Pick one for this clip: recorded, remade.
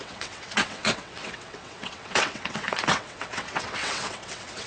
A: remade